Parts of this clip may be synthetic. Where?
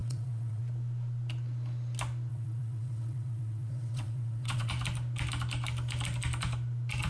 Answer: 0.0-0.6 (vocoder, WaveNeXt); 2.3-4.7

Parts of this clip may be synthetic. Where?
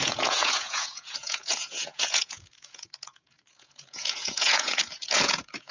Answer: 0.0-5.7 (vocoder, Vocos)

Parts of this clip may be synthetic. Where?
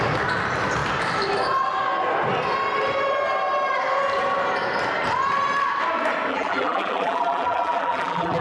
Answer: 6.3-8.4 (vocoder, BigVGAN v2)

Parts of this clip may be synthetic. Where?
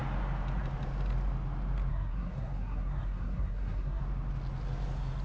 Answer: 1.9-4.0 (codec, SNAC)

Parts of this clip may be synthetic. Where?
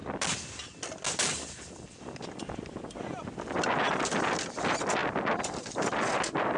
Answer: none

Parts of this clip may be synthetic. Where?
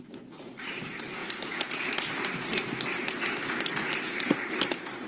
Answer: none